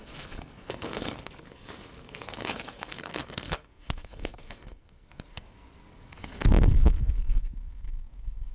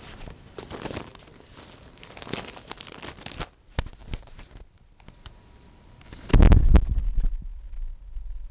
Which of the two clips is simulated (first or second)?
first